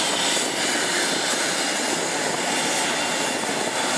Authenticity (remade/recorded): recorded